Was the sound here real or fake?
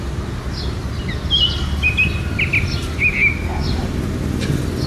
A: real